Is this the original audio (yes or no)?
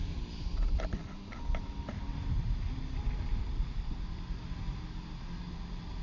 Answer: yes